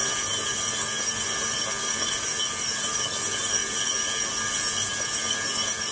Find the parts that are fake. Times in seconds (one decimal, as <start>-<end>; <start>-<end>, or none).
none